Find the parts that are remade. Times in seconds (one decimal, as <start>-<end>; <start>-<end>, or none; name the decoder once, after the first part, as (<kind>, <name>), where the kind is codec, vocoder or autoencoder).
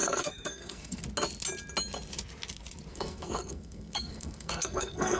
0.0-1.0 (codec, SNAC); 2.9-5.2